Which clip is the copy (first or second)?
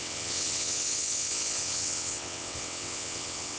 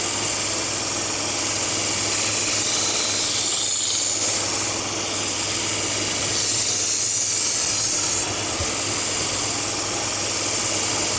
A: first